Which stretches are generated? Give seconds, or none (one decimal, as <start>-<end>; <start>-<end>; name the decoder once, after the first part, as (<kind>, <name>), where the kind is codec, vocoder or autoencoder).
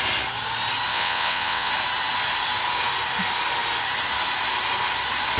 0.9-1.7 (vocoder, WaveNeXt)